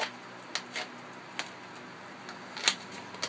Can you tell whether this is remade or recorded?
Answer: recorded